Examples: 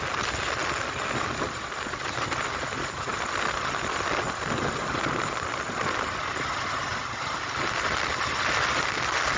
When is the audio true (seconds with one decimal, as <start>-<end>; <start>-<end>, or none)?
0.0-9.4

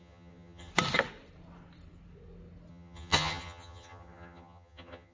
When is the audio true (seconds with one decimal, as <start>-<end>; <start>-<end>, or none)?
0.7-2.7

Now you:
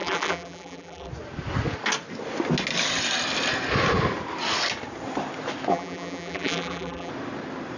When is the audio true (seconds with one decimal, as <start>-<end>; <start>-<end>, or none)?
1.1-5.7; 7.1-7.8

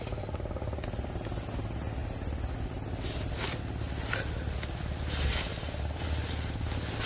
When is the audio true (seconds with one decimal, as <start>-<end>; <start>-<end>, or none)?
0.0-7.1

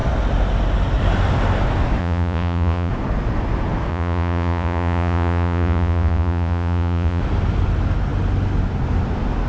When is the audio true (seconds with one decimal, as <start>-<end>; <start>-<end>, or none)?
0.0-2.0; 2.9-3.9; 7.2-9.5

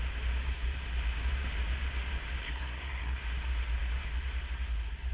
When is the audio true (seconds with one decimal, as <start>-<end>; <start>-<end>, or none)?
0.0-2.4; 3.2-5.1

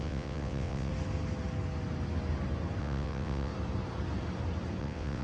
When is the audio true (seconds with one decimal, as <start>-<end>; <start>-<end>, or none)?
0.9-2.8; 3.5-4.8